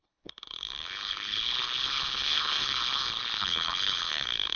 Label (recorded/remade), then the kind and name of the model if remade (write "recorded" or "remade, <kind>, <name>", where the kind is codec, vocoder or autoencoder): remade, codec, HILCodec